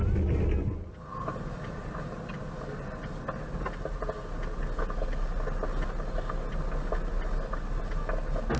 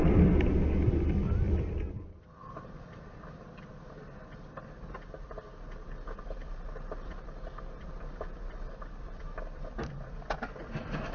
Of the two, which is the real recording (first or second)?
first